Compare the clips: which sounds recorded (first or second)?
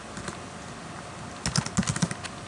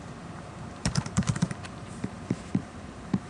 first